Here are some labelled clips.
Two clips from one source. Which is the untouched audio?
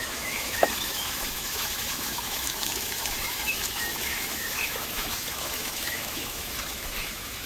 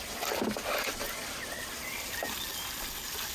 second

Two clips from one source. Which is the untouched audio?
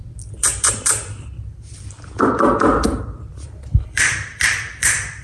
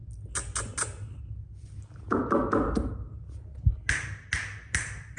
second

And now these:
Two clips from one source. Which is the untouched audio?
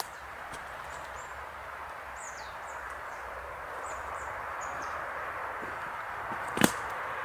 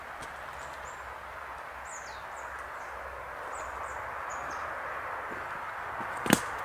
second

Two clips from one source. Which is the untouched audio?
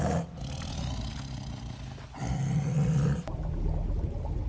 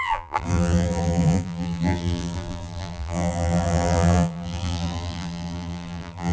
first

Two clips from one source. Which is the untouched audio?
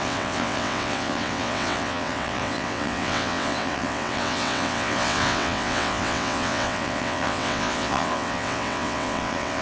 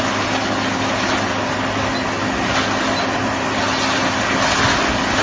second